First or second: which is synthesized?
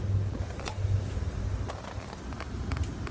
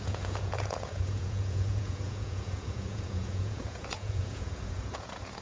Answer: second